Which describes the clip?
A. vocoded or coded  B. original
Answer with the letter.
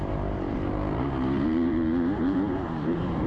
A